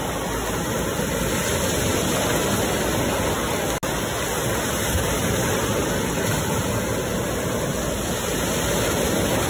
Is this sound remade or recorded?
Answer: recorded